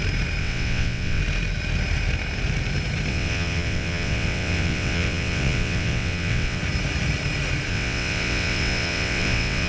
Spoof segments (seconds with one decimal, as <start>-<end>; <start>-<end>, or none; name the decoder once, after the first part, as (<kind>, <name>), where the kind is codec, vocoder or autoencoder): 0.4-1.2 (vocoder, WaveNeXt); 3.1-6.6; 7.7-9.7